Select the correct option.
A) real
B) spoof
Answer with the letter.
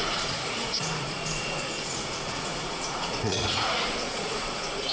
B